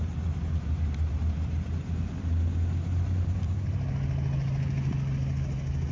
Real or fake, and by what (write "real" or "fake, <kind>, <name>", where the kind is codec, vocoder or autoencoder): real